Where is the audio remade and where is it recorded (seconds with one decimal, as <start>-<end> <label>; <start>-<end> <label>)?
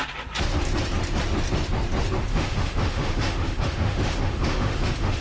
0.0-2.3 recorded; 2.3-5.2 remade